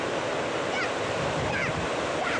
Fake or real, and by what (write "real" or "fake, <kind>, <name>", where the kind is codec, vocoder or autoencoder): real